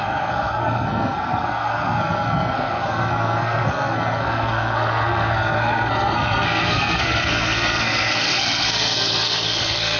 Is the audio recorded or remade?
remade